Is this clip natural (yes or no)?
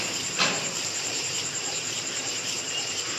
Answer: no